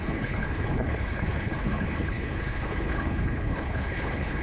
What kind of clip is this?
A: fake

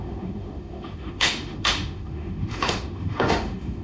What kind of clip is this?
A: fake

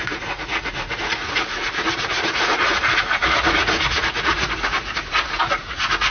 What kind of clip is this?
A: fake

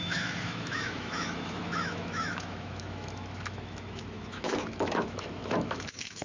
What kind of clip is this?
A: fake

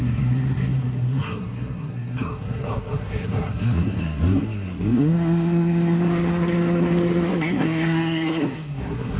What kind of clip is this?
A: fake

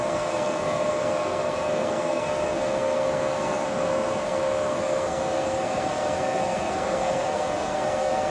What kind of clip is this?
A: fake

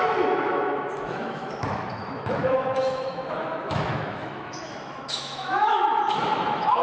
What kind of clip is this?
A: fake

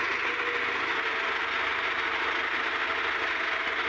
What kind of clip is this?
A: real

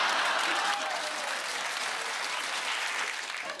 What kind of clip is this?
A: real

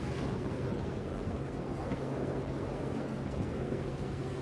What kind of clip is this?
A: fake